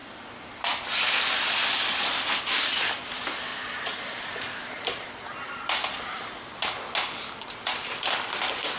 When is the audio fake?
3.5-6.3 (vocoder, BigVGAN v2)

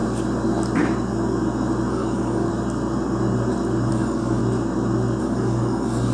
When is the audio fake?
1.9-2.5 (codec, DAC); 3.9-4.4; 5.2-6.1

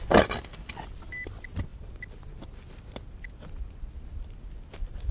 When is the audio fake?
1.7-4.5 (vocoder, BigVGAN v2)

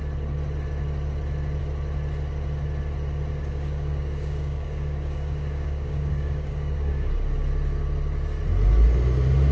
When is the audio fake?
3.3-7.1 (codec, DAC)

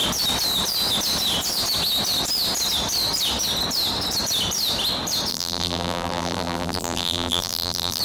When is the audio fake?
5.3-8.0 (vocoder, BigVGAN v2)